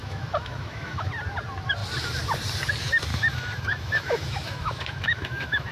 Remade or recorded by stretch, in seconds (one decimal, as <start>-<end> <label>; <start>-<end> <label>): 0.0-1.1 remade; 1.1-3.1 recorded; 3.1-5.7 remade